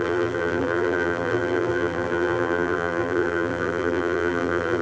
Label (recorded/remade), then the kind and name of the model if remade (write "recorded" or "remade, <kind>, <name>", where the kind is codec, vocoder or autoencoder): remade, vocoder, BigVGAN v2